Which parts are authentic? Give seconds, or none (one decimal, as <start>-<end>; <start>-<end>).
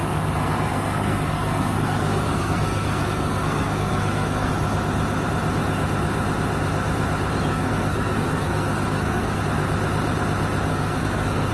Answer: 4.5-7.5; 9.4-10.7